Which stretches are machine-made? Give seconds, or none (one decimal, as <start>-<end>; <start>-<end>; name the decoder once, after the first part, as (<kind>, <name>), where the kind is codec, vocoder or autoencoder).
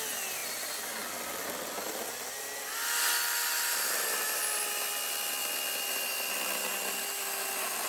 5.4-5.9 (vocoder, BigVGAN v2)